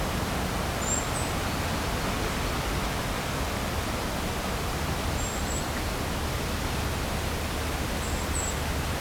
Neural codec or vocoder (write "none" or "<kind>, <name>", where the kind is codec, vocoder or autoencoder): none